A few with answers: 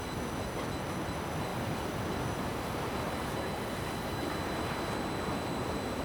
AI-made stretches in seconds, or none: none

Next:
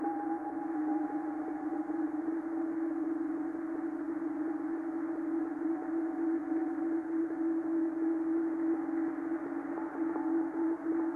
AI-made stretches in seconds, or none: none

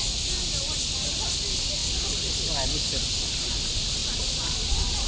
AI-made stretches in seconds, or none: none

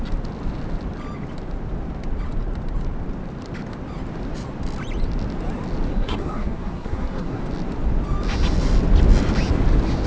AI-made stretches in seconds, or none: 5.9-7.4 (codec, SNAC)

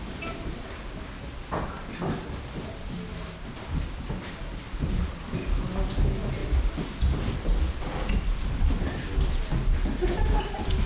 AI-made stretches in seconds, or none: none

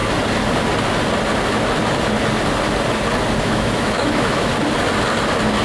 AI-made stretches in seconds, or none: 3.4-4.5 (autoencoder, DAC-VAE)

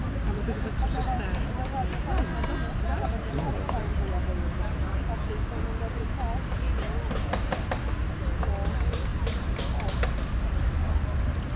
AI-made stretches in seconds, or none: none